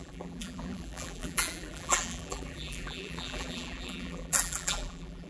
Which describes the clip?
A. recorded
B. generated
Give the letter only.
B